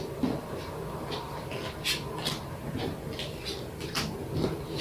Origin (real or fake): real